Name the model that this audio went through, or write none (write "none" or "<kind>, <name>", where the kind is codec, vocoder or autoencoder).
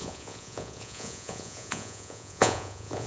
vocoder, Vocos